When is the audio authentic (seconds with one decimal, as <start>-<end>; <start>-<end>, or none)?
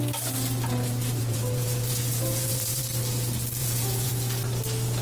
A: 0.0-1.2; 2.8-3.6; 4.1-5.0